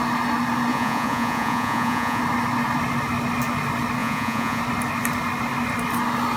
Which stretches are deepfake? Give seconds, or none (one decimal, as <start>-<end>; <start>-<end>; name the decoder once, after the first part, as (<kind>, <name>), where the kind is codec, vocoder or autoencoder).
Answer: 0.7-2.2 (vocoder, Vocos); 4.0-4.6